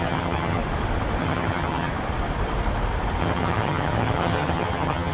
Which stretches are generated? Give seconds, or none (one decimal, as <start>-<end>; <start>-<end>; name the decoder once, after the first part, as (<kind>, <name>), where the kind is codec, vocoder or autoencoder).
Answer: 0.0-0.6 (vocoder, HiFi-GAN); 1.2-1.9; 3.2-5.1